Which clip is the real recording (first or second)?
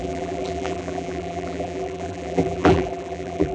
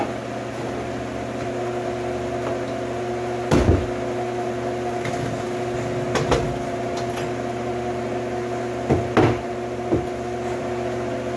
second